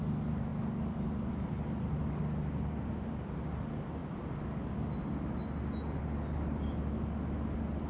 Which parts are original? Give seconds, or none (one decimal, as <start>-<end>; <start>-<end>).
0.0-7.9